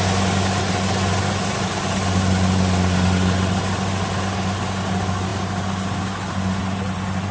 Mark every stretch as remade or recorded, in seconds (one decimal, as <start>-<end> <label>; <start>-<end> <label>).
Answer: 0.0-7.3 recorded